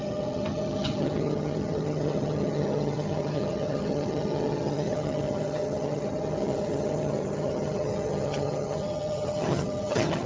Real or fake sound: fake